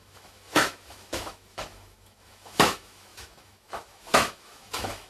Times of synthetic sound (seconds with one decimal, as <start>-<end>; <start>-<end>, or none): 0.0-5.1